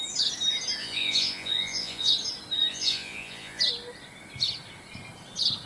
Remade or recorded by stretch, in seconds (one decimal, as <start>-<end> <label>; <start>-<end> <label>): 0.0-0.8 recorded; 0.8-2.1 remade; 2.1-2.7 recorded; 2.7-3.6 remade; 3.6-5.7 recorded